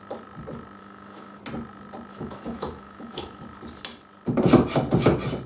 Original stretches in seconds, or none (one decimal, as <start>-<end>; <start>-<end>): 0.0-0.8; 1.4-2.1; 3.4-5.5